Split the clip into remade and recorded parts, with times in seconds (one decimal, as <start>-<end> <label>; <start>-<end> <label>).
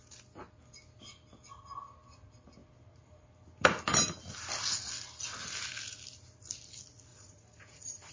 0.0-7.1 recorded; 7.1-8.1 remade